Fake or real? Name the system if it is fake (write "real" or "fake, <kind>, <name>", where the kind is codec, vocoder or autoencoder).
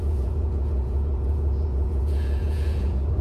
fake, vocoder, Vocos